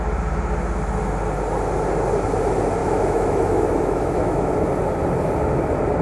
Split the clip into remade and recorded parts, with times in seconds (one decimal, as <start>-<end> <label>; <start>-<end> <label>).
0.0-2.8 recorded; 2.8-4.5 remade; 4.5-6.0 recorded